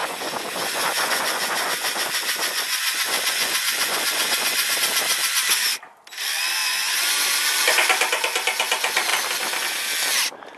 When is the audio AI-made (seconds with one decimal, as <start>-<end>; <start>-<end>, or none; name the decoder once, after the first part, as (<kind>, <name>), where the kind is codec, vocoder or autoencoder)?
0.0-4.8 (vocoder, Vocos); 6.6-7.2